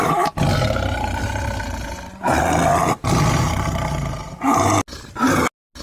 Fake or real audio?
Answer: real